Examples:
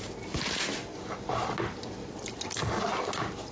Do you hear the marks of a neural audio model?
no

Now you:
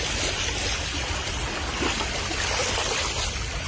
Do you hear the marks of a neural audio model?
no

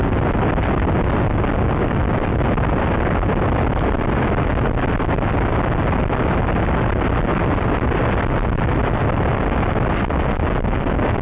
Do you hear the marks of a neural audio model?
no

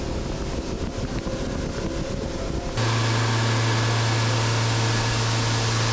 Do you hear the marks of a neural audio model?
no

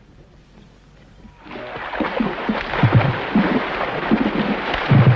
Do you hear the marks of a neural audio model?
no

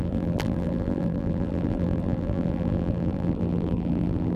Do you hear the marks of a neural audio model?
yes